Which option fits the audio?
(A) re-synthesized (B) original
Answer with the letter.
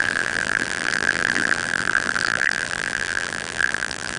A